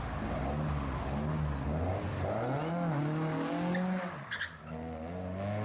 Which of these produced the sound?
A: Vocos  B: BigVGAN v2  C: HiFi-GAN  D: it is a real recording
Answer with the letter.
D